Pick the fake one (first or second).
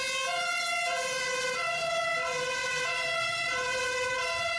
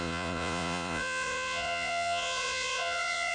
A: second